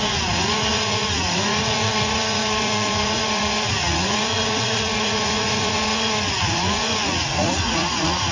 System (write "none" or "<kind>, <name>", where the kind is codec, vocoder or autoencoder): vocoder, Vocos